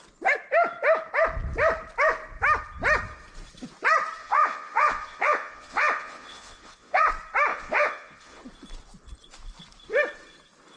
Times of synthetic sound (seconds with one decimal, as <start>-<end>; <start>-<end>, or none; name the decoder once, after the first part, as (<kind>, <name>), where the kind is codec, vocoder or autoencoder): 4.2-7.1 (vocoder, Vocos); 7.5-8.4